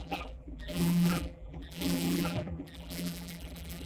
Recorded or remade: remade